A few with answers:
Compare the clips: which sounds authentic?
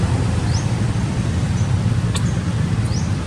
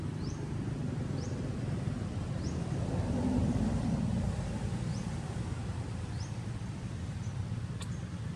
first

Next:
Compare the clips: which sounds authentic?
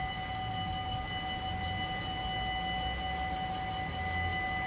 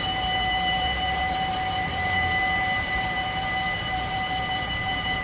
first